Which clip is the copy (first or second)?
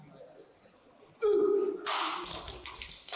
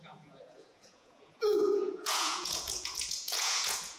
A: second